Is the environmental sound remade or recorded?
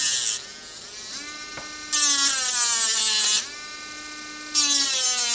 recorded